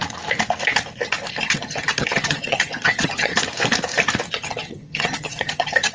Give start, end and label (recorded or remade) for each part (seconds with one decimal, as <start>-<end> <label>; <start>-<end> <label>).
0.0-1.4 recorded; 1.4-3.3 remade; 3.3-4.3 recorded; 4.3-5.9 remade